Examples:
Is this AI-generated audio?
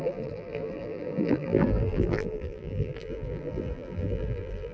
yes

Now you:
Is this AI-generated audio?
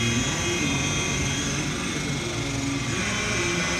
no